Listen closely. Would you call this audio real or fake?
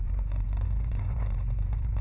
fake